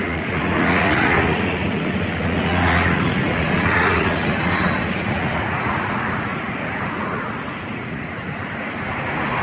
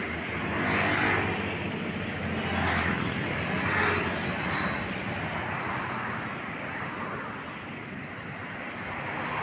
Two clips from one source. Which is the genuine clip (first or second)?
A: second